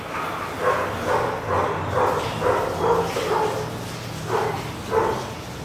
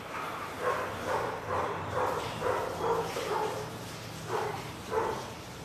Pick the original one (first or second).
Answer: first